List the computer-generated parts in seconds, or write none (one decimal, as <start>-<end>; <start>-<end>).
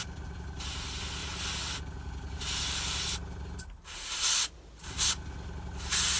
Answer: none